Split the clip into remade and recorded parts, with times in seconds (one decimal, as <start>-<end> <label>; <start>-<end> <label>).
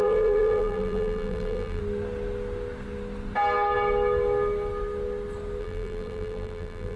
0.0-1.8 remade; 1.8-5.6 recorded; 5.6-7.0 remade